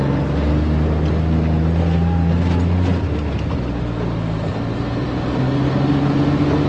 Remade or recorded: recorded